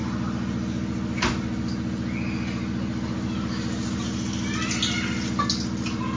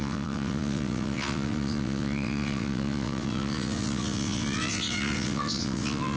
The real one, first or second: first